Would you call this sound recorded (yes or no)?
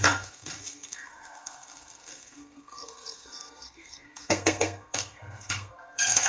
no